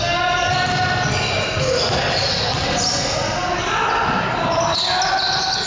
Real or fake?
real